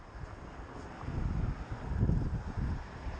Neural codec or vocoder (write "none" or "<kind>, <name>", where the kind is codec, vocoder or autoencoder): none